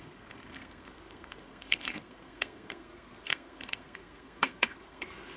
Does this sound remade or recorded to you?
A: remade